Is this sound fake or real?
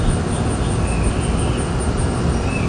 real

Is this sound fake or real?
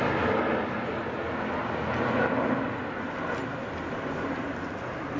real